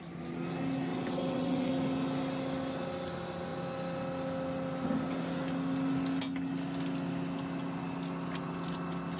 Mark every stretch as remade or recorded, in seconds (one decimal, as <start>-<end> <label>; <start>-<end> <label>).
0.0-0.9 recorded; 0.9-1.7 remade; 1.7-9.2 recorded